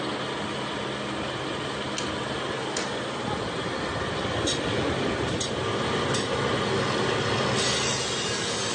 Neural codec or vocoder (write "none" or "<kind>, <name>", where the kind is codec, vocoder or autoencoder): none